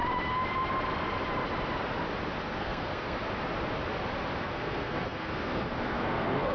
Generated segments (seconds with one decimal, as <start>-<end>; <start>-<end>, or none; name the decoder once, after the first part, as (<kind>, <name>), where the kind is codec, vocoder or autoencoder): 2.4-3.2 (codec, SNAC); 4.4-6.5